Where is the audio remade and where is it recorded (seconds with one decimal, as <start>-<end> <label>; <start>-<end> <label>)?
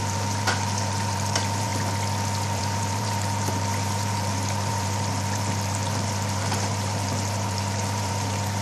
0.0-1.7 remade; 1.7-2.6 recorded; 2.6-8.6 remade